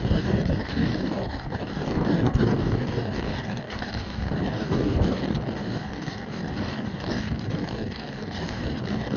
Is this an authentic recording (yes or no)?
no